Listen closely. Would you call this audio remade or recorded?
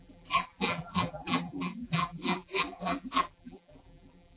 remade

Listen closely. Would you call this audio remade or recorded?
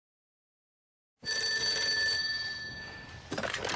recorded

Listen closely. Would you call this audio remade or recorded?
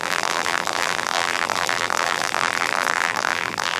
remade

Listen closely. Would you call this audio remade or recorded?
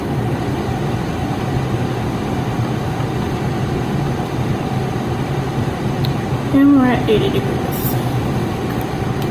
recorded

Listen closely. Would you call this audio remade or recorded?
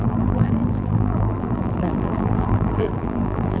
remade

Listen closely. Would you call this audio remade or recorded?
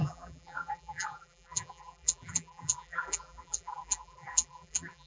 remade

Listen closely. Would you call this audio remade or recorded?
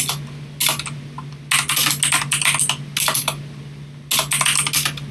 recorded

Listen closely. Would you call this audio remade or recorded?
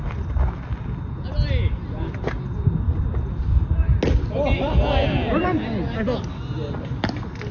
recorded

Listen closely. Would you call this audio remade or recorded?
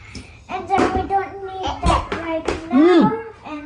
remade